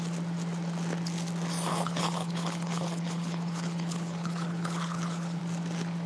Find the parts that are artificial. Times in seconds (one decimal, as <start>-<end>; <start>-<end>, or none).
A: 1.7-5.4